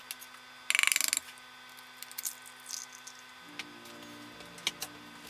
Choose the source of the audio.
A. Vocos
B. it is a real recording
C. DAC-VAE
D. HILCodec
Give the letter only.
B